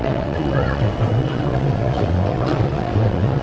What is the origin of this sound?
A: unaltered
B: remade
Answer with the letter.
B